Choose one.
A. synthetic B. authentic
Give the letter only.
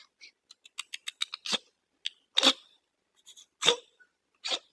B